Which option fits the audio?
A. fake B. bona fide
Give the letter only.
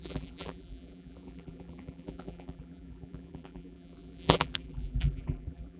A